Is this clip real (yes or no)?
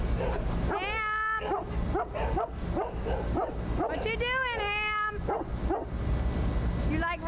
yes